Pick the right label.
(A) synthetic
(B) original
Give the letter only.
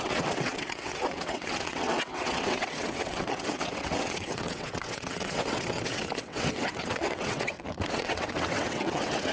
A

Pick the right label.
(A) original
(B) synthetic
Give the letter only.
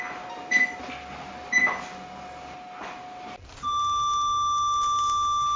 A